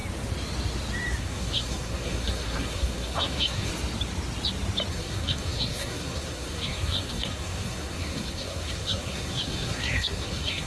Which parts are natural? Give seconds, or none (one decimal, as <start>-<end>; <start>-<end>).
0.0-1.2; 3.7-4.9